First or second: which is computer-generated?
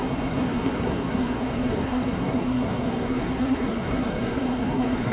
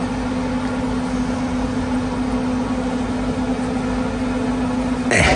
first